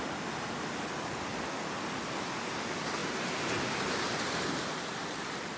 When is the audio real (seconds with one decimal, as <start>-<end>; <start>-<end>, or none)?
0.0-5.6